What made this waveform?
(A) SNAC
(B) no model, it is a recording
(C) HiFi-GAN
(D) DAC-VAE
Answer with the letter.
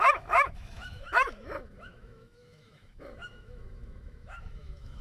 D